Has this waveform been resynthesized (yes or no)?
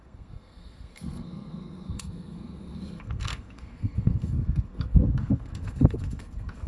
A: yes